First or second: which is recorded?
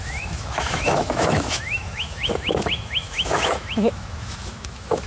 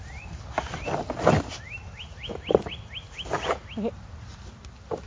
second